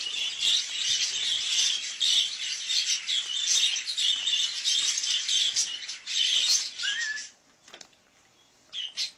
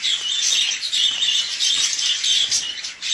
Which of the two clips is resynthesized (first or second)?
second